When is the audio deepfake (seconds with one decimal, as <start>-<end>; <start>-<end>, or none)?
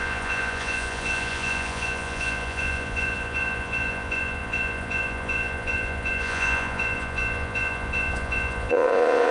0.0-9.3